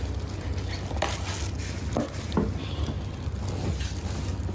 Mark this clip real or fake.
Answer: real